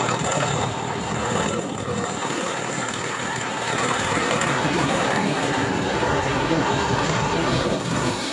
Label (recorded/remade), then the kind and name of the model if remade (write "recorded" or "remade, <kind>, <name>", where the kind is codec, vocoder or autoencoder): remade, codec, SNAC